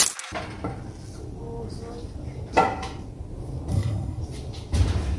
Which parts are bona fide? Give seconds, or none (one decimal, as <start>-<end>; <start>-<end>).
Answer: 0.0-3.7; 4.2-5.2